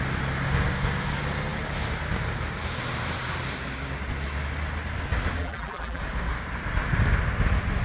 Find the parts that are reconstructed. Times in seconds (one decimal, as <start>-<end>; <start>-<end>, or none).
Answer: 5.4-6.0